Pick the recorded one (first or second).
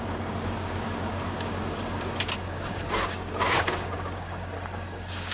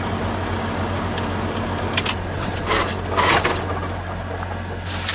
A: second